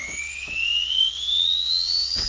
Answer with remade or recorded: remade